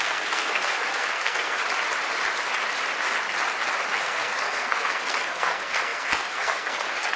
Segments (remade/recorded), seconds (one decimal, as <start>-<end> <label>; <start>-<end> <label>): 0.0-1.6 remade; 1.6-4.0 recorded; 4.0-7.2 remade